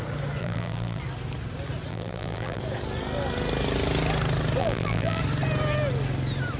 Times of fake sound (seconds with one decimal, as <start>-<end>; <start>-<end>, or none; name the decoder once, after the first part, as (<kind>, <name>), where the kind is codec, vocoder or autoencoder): 0.4-1.0 (vocoder, BigVGAN v2); 1.9-2.6; 4.6-5.2